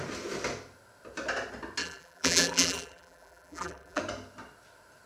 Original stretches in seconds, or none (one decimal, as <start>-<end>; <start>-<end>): 0.0-1.8; 4.0-5.1